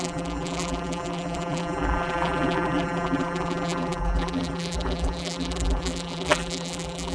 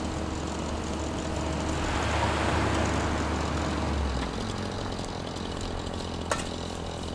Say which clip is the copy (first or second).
first